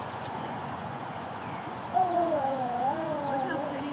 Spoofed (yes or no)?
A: yes